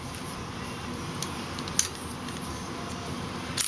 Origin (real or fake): real